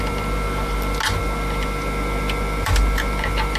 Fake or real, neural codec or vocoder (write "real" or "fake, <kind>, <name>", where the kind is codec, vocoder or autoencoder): real